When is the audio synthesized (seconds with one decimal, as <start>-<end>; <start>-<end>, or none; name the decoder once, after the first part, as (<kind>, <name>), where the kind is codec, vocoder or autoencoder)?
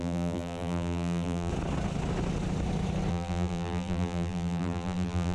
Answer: 0.0-1.5 (vocoder, BigVGAN v2); 3.1-5.3